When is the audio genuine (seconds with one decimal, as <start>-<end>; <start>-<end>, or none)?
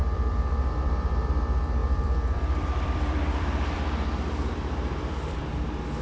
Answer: 1.3-1.8; 5.4-6.0